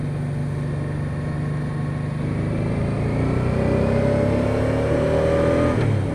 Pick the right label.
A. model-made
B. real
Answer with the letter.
B